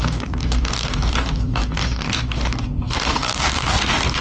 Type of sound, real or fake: fake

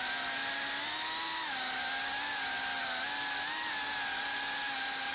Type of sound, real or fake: real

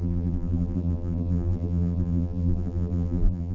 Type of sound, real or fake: fake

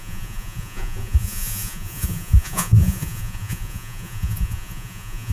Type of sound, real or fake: fake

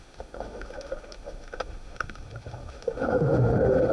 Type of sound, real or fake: fake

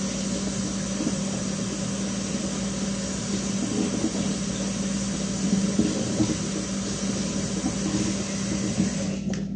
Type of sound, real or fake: real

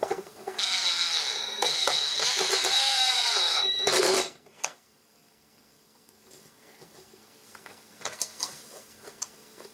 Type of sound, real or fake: fake